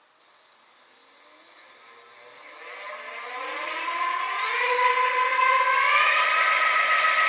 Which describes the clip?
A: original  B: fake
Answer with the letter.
A